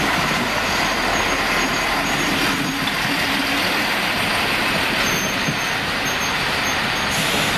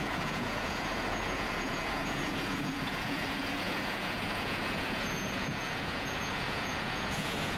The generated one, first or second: second